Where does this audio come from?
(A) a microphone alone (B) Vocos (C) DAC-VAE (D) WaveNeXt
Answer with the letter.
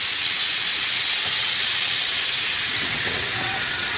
D